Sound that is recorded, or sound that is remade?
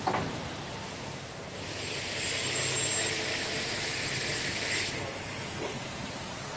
recorded